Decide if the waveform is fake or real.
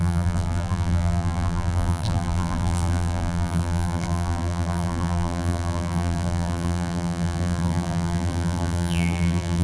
fake